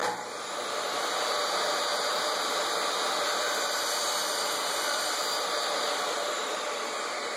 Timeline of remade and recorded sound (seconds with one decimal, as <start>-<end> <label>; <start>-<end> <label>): 0.0-1.1 remade; 1.1-1.9 recorded; 1.9-2.9 remade; 2.9-4.2 recorded; 4.2-7.4 remade